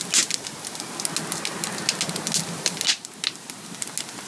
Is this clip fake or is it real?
real